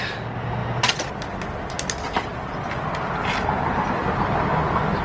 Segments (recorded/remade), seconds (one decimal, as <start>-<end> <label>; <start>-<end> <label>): 0.0-5.0 recorded